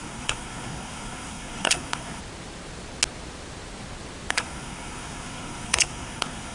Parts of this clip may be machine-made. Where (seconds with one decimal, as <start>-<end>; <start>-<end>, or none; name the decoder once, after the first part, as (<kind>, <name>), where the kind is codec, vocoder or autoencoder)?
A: 0.0-2.2 (codec, SNAC); 4.3-6.5